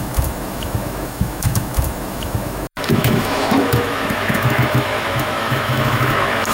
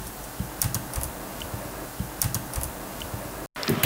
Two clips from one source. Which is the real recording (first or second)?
second